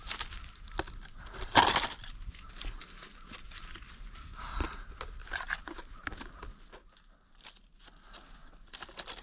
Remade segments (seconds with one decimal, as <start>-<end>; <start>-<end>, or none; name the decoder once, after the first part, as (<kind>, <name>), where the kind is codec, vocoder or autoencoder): none